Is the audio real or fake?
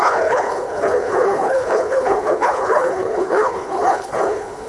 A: fake